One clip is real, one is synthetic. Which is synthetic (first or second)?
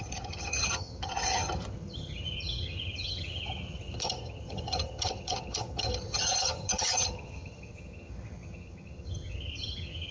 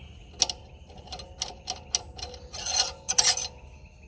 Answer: first